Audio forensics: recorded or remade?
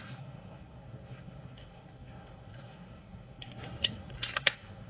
remade